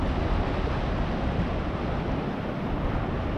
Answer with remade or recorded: recorded